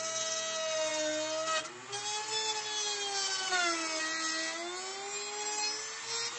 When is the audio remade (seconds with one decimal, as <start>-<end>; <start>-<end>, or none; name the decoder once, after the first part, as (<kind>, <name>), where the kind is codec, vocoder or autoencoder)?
none